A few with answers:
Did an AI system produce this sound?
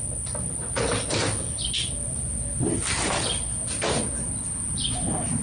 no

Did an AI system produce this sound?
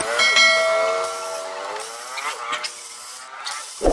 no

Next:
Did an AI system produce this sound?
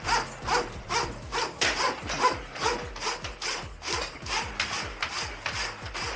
no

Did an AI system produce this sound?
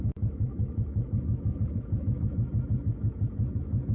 yes